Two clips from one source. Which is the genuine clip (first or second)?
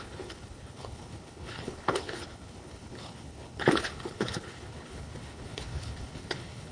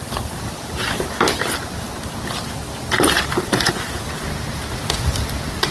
second